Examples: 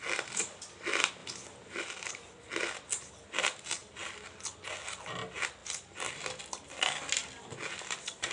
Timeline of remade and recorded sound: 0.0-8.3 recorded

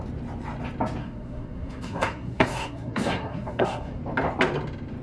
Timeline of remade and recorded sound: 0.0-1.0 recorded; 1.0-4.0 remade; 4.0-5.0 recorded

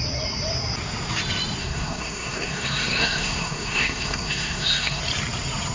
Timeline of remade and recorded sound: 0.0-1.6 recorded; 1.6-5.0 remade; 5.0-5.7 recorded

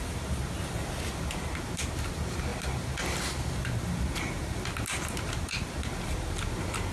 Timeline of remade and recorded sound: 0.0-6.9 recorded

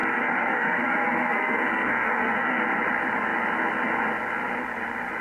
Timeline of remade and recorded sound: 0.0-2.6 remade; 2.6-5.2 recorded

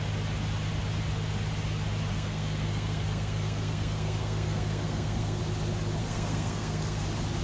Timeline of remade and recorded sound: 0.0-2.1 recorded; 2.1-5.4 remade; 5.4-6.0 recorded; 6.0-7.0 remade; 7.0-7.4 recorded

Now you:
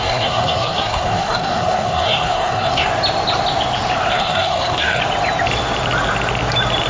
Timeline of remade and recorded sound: 0.0-2.9 remade; 2.9-4.1 recorded; 4.1-5.0 remade; 5.0-6.9 recorded

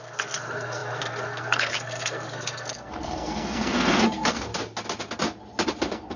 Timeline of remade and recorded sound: 0.0-4.5 remade; 4.5-5.8 recorded; 5.8-6.2 remade